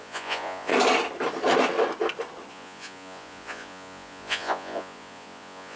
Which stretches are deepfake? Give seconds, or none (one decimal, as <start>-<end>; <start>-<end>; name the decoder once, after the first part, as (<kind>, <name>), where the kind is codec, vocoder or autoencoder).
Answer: 0.0-0.7 (vocoder, Vocos); 2.5-5.8